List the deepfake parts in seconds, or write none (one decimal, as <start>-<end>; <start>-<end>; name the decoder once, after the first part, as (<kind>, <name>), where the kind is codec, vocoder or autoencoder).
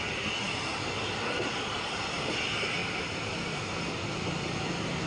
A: 2.8-4.0 (vocoder, BigVGAN v2)